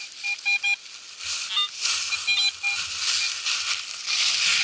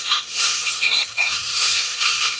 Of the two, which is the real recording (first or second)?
first